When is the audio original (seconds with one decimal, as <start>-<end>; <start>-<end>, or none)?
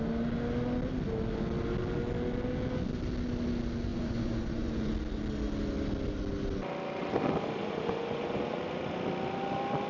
0.0-3.9; 4.9-7.6; 8.6-9.9